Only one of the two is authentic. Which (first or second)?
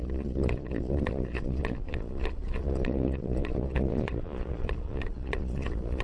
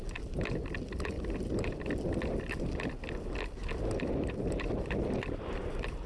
second